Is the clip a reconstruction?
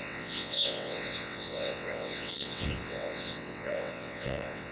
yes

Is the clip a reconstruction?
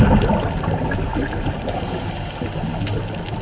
no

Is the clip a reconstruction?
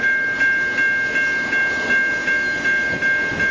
no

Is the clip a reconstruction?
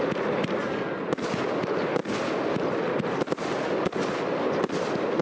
no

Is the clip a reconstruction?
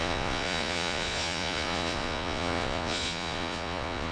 yes